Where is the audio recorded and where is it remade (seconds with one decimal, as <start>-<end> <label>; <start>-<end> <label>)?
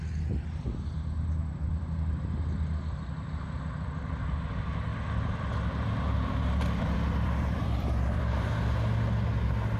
0.0-4.9 recorded; 4.9-8.3 remade; 8.3-9.8 recorded